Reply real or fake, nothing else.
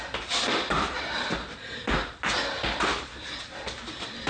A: real